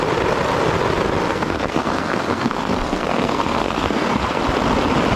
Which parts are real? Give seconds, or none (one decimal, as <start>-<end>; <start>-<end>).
0.0-1.3; 4.4-5.2